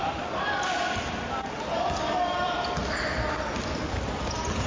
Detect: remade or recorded remade